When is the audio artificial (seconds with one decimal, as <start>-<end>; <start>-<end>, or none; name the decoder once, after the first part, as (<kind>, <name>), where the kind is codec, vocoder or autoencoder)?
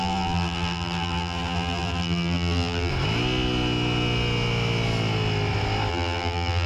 0.0-2.9 (vocoder, BigVGAN v2); 5.9-6.7